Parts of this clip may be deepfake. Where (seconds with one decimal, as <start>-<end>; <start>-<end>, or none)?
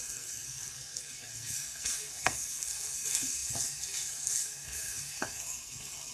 0.0-6.1